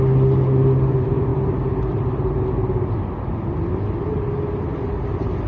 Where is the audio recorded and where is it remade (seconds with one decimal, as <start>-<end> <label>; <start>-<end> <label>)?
0.0-5.5 recorded